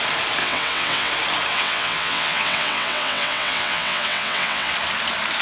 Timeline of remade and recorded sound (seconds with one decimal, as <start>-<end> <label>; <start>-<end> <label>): 0.0-0.4 recorded; 0.4-1.1 remade; 1.1-1.5 recorded; 1.5-4.7 remade; 4.7-5.4 recorded